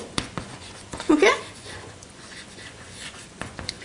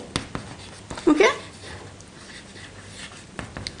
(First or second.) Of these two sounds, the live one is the second